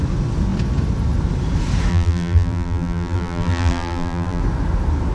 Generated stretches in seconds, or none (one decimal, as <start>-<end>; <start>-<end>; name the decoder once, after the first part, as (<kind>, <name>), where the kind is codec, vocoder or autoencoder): 1.9-4.4 (vocoder, BigVGAN v2)